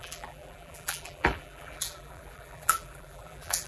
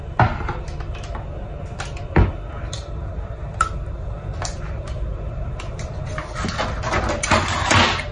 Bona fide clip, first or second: second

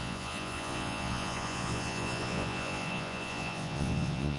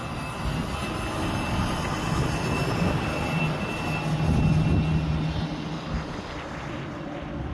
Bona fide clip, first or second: second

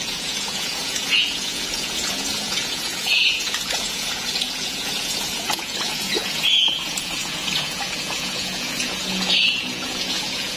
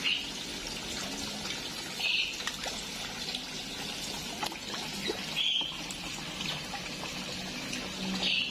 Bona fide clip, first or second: second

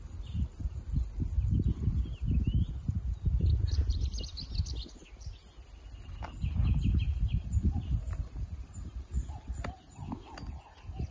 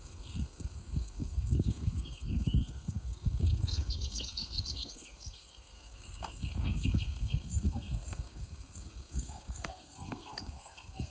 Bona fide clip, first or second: first